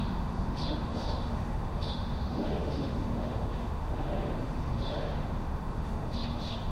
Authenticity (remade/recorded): remade